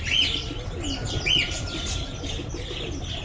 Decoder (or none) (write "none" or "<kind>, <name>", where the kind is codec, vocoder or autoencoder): none